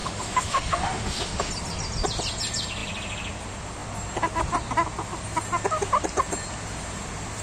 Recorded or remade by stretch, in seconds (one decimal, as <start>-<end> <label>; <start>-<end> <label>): 0.0-1.5 remade; 1.5-7.4 recorded